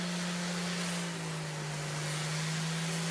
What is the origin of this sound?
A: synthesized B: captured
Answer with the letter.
B